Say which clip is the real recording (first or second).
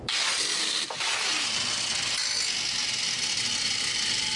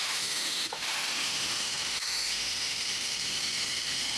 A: first